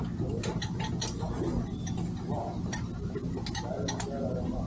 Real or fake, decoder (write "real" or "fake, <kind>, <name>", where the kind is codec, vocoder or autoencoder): real